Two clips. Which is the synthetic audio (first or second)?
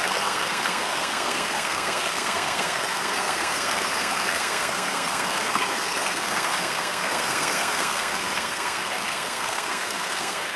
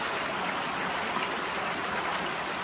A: first